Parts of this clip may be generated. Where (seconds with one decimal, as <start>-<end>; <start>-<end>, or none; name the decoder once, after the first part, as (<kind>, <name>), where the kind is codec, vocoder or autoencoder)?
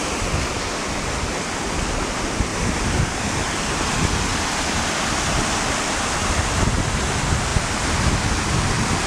2.5-3.0 (vocoder, BigVGAN v2); 4.3-4.8; 6.2-6.9